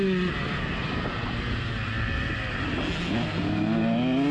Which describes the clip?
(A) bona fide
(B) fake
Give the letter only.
A